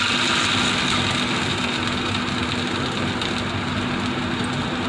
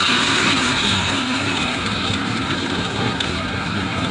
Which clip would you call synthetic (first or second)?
second